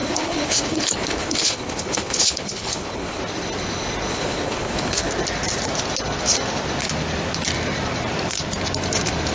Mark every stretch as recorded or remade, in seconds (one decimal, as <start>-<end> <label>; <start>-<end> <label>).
0.0-3.2 remade; 3.2-4.1 recorded; 4.1-5.1 remade; 5.1-9.3 recorded